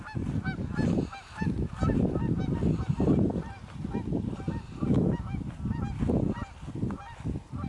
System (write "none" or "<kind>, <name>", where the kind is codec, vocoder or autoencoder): none